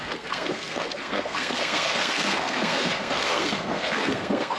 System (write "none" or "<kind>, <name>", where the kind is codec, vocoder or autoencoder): codec, SNAC